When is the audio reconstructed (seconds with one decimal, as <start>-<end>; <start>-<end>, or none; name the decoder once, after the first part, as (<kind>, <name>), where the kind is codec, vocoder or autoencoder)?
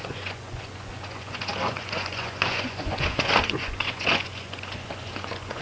0.0-5.6 (vocoder, Vocos)